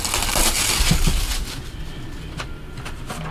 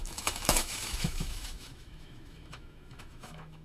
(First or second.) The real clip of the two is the first